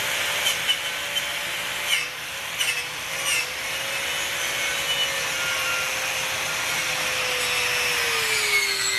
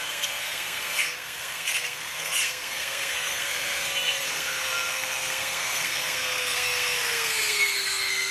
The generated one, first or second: second